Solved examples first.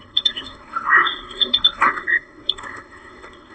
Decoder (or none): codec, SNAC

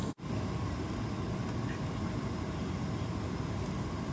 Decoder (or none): none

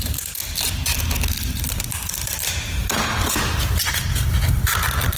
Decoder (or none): none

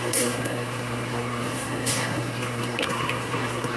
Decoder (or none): codec, SNAC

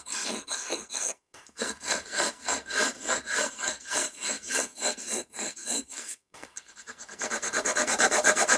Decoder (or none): codec, SNAC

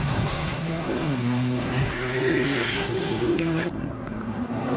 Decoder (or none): codec, SNAC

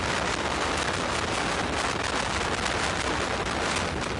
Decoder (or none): none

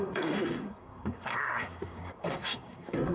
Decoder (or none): codec, SNAC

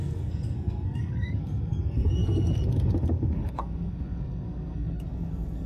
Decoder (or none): codec, SNAC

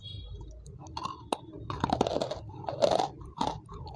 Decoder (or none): none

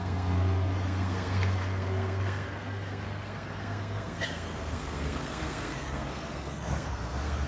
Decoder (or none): codec, SNAC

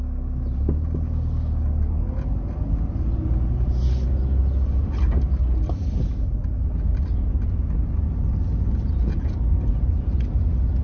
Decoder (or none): none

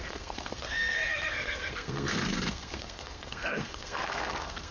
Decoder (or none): codec, SNAC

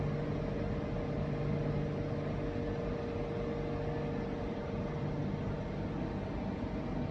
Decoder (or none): none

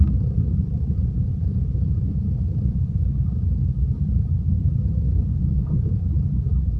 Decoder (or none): none